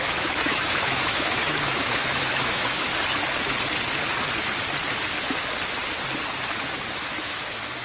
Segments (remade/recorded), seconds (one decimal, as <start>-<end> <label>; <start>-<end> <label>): 0.0-2.9 remade; 2.9-6.9 recorded; 6.9-7.8 remade